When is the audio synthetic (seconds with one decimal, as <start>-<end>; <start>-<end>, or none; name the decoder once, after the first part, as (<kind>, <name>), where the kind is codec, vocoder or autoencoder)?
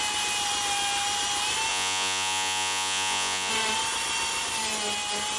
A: 1.7-3.5 (vocoder, Vocos)